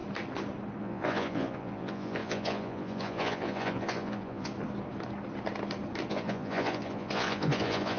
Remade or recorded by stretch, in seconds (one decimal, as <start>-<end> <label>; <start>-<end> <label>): 0.0-0.8 recorded; 0.8-4.5 remade; 4.5-6.1 recorded; 6.1-8.0 remade